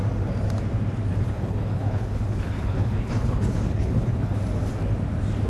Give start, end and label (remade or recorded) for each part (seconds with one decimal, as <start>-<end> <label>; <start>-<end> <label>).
0.0-1.1 recorded; 1.1-4.4 remade; 4.4-5.5 recorded